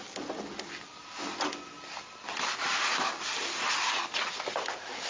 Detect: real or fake real